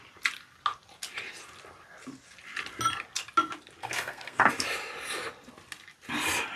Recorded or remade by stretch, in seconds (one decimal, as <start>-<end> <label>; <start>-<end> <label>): 0.0-3.8 recorded; 3.8-4.5 remade; 4.5-6.6 recorded

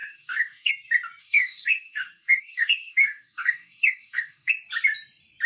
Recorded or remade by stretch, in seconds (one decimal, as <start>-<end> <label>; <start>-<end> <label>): 0.0-0.7 remade; 0.7-1.2 recorded; 1.2-4.5 remade; 4.5-5.5 recorded

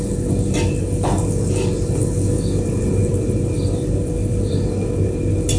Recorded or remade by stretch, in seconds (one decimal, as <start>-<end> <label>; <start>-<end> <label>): 0.0-5.6 recorded

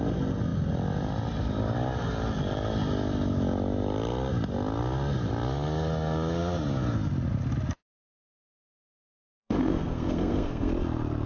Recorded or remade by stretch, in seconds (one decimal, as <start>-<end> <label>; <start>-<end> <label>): 0.0-8.8 recorded; 8.8-10.7 remade; 10.7-11.3 recorded